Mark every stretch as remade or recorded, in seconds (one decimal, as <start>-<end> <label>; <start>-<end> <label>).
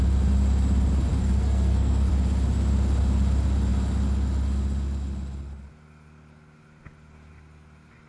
0.0-1.1 recorded; 1.1-2.1 remade; 2.1-8.1 recorded